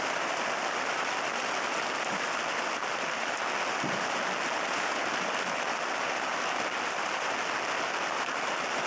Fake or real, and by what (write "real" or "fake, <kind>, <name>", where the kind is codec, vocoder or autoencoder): real